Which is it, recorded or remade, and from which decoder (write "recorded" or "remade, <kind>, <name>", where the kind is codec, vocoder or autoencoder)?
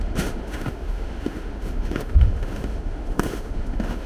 remade, autoencoder, DAC-VAE